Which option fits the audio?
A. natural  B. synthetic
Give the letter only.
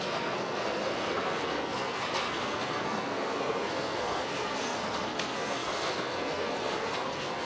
B